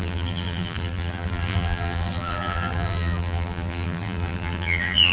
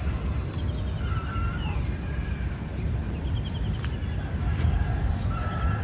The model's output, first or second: first